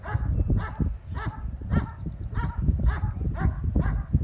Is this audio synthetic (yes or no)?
no